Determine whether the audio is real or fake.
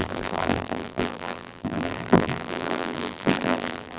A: fake